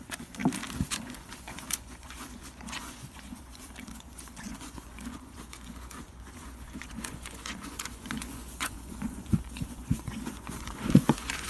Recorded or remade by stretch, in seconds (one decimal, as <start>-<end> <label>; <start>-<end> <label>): 0.0-0.4 remade; 0.4-0.9 recorded; 0.9-11.5 remade

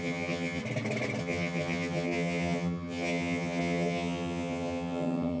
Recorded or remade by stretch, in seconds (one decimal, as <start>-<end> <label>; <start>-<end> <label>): 0.0-0.6 remade; 0.6-1.2 recorded; 1.2-5.4 remade

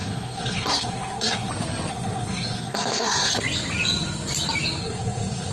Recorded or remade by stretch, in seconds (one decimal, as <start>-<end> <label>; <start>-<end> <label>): 0.0-1.5 remade; 1.5-1.9 recorded; 1.9-3.3 remade; 3.3-4.8 recorded; 4.8-5.5 remade